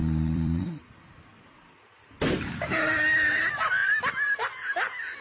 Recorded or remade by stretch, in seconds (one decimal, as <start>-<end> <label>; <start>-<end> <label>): 0.0-0.9 remade; 0.9-5.2 recorded